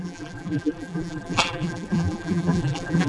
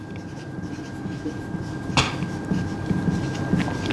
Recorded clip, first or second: second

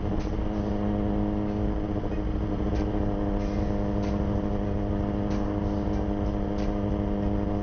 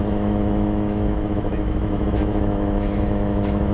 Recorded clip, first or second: first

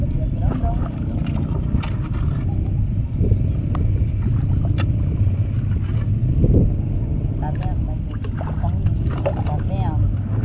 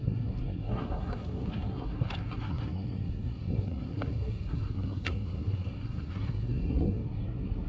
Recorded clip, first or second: first